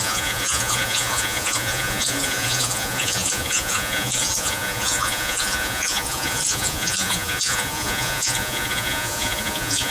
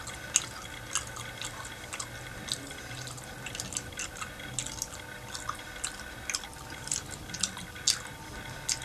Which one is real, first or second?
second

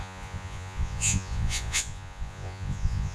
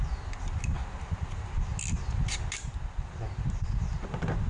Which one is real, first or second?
second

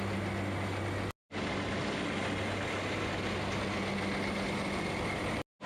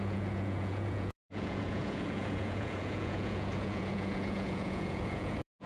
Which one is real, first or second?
first